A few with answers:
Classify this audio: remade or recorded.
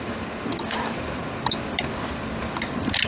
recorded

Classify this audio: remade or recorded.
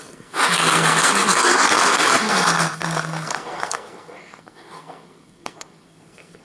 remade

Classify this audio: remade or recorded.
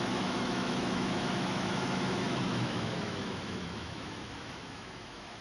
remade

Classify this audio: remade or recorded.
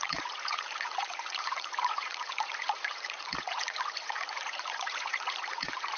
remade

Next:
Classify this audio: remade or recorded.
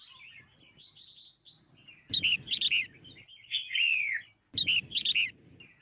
recorded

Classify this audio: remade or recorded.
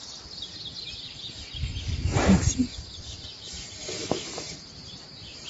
recorded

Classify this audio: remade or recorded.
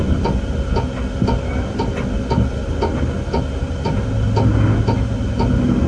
recorded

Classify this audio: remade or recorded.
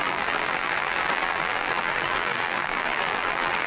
remade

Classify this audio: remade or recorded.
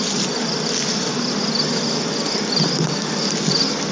recorded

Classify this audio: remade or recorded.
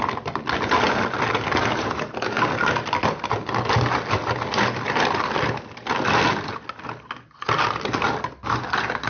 recorded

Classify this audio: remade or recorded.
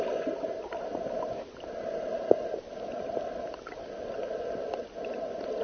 recorded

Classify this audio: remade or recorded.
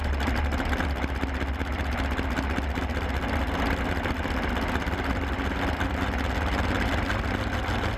recorded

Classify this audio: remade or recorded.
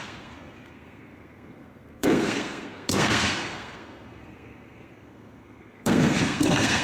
remade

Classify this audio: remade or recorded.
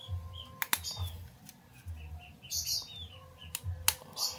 recorded